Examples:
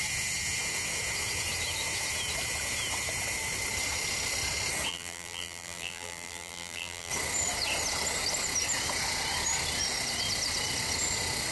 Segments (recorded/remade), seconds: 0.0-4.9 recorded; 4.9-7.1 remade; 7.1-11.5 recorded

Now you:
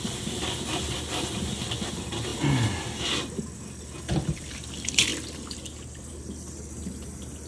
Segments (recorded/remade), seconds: 0.0-7.5 recorded

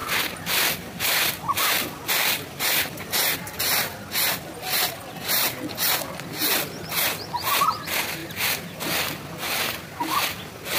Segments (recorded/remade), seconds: 0.0-3.7 remade; 3.7-8.2 recorded; 8.2-10.8 remade